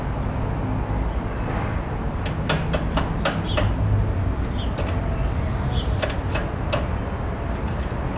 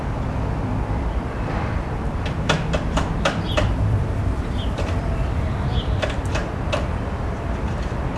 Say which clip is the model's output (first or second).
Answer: second